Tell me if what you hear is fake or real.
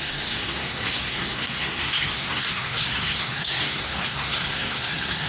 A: fake